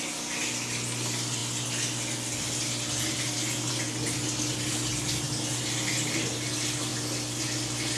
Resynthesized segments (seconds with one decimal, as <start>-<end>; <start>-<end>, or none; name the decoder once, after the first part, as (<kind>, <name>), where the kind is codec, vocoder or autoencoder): none